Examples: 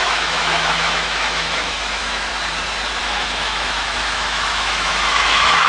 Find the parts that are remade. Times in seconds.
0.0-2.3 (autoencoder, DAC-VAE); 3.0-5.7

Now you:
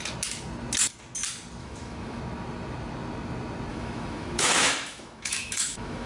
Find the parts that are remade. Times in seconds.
1.6-2.2 (autoencoder, DAC-VAE); 3.7-6.1